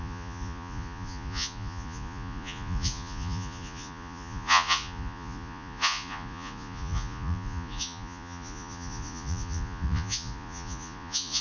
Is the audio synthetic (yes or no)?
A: yes